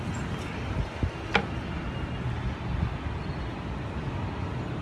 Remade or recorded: recorded